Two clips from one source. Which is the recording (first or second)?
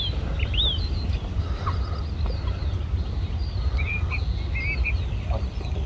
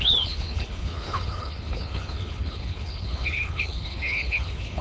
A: first